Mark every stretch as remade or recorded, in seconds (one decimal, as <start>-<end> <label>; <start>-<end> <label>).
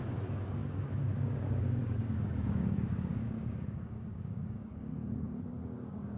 0.0-4.9 remade; 4.9-5.5 recorded; 5.5-6.2 remade